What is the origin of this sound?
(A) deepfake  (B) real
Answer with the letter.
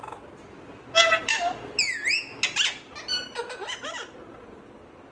B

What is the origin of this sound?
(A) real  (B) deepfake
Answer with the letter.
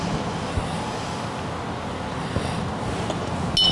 A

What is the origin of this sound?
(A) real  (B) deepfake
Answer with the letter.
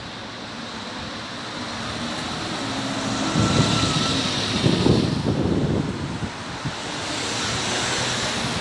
A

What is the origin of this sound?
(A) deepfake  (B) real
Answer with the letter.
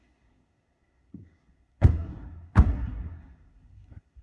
A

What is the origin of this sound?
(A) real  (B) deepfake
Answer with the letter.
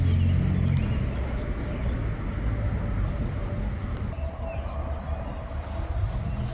A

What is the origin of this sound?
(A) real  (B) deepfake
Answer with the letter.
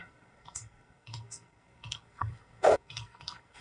B